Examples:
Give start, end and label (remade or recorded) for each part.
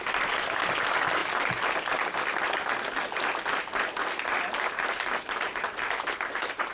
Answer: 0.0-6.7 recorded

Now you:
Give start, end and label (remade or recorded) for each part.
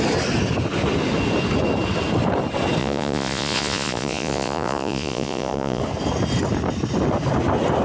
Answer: 0.0-2.8 recorded; 2.8-5.8 remade; 5.8-7.8 recorded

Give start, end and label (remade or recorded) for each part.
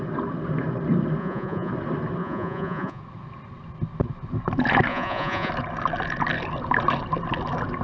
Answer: 0.0-1.2 recorded; 1.2-1.7 remade; 1.7-2.2 recorded; 2.2-3.0 remade; 3.0-4.9 recorded; 4.9-5.5 remade; 5.5-7.8 recorded